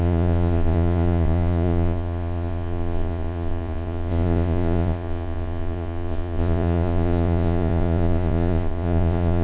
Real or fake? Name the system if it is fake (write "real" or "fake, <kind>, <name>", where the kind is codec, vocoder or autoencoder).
fake, vocoder, Vocos